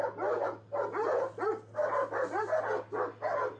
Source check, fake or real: real